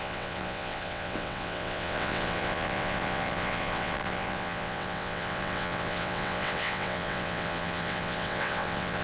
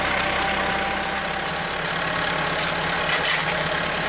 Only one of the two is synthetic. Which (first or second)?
first